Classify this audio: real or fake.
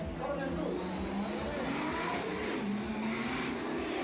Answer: real